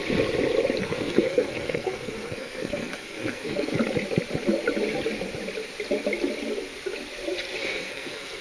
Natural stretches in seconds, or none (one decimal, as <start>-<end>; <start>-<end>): 0.0-0.8; 3.8-7.6